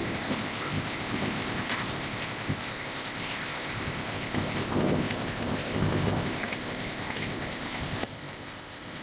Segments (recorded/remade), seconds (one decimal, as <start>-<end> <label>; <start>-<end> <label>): 0.0-9.0 remade